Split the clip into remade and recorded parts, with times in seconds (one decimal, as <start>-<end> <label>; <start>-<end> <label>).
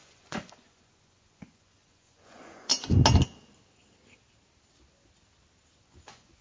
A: 0.0-2.7 remade; 2.7-5.8 recorded; 5.8-6.4 remade